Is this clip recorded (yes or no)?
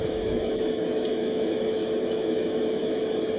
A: no